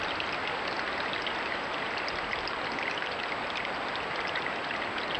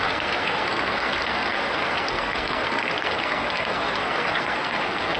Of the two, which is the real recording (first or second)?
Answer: first